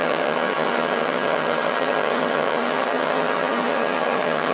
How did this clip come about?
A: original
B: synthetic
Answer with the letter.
B